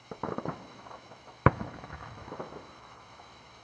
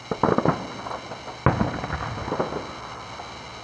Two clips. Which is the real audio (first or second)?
second